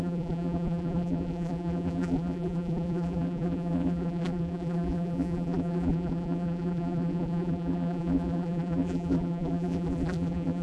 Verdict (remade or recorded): remade